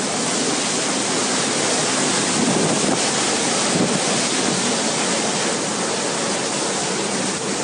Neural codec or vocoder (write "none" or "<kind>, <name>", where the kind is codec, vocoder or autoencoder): none